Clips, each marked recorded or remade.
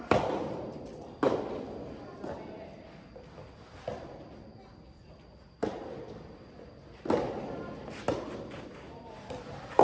recorded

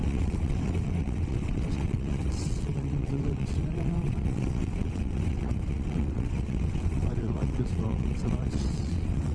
remade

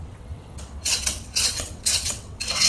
remade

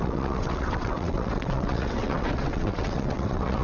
remade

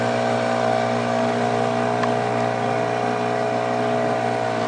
recorded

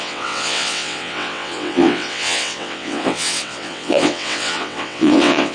remade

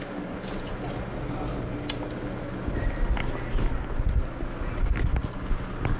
recorded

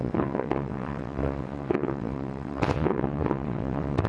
remade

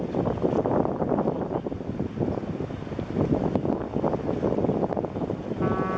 recorded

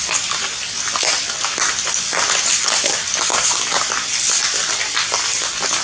recorded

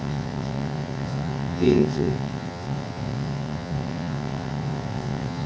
remade